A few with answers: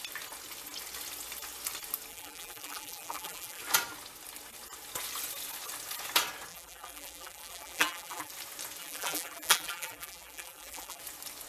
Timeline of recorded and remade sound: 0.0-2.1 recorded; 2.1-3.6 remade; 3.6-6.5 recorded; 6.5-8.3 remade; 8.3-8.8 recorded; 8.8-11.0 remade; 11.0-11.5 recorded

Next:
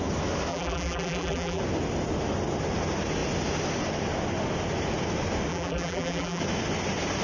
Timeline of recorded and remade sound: 0.0-0.5 recorded; 0.5-1.6 remade; 1.6-5.5 recorded; 5.5-6.4 remade; 6.4-7.2 recorded

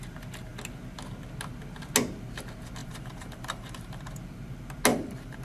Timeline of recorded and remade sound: 0.0-2.8 recorded; 2.8-4.0 remade; 4.0-4.9 recorded; 4.9-5.4 remade

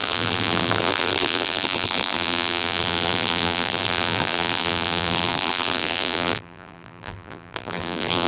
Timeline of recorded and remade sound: 0.0-8.3 remade

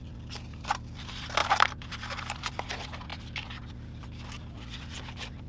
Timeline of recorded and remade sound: 0.0-5.5 remade

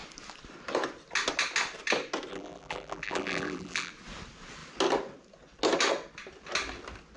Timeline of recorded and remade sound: 0.0-2.3 recorded; 2.3-3.9 remade; 3.9-7.2 recorded